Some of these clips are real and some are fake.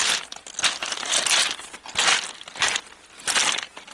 real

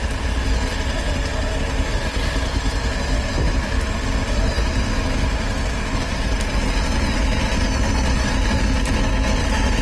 real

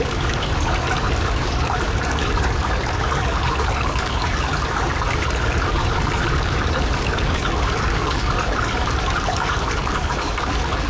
fake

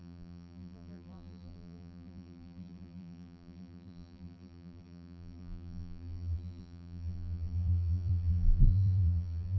fake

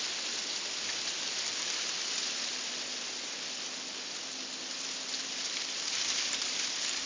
real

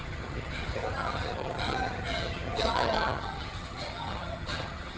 fake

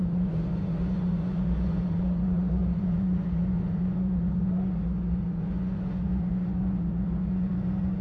fake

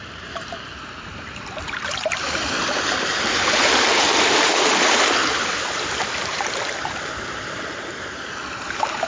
fake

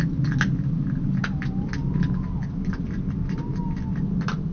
real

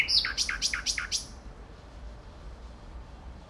fake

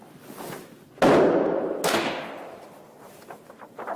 real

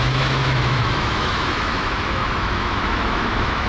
fake